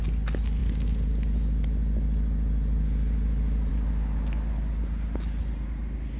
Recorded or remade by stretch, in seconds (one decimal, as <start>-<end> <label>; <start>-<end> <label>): 0.0-6.2 recorded